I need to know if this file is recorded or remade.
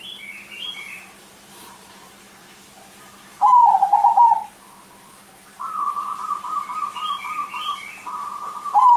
remade